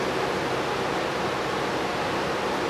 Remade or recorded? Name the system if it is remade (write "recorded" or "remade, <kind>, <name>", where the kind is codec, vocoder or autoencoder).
recorded